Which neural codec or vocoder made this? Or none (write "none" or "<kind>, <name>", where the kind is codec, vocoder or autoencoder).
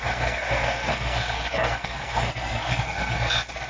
codec, SNAC